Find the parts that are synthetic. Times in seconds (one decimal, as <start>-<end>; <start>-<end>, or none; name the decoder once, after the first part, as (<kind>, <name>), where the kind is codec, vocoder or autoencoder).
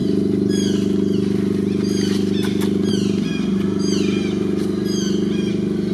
none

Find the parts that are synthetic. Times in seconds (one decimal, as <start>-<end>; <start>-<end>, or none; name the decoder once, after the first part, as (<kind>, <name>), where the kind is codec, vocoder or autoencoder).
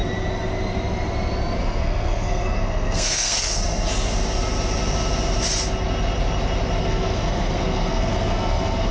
1.6-3.6 (codec, SNAC); 6.8-8.9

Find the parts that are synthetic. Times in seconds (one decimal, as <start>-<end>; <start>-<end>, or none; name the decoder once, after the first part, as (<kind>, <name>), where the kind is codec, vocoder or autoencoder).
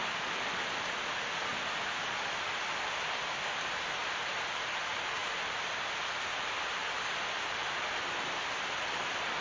0.0-0.7 (vocoder, BigVGAN v2); 1.5-4.0; 5.2-9.4